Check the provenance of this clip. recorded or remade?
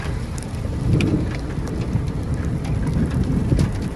recorded